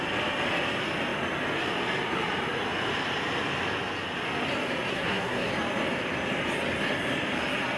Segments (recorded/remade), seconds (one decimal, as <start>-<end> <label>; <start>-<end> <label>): 0.0-4.9 recorded; 4.9-5.5 remade; 5.5-7.8 recorded